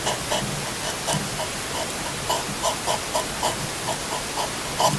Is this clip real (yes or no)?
yes